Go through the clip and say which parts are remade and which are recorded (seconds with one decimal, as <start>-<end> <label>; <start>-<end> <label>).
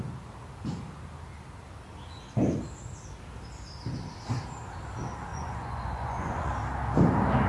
0.0-5.3 recorded; 5.3-6.5 remade; 6.5-7.5 recorded